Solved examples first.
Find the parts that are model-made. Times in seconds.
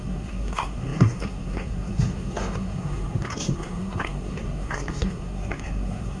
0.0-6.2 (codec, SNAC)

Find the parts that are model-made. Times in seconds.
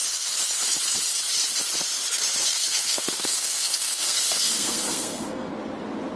2.4-5.5 (codec, SNAC)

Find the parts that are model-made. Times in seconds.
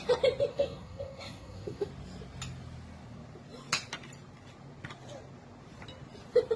0.5-1.9 (codec, SNAC)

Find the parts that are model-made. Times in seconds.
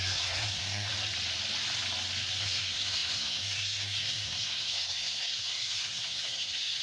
0.0-0.9 (codec, SNAC); 2.4-6.8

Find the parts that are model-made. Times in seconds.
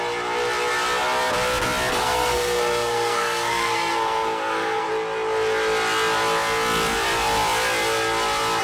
1.9-4.9 (codec, SNAC)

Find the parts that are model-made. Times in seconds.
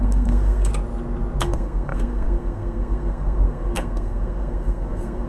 0.0-0.7 (codec, SNAC); 1.4-5.3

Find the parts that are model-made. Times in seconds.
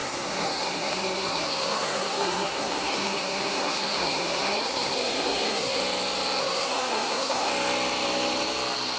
0.0-5.8 (codec, SNAC); 6.4-7.5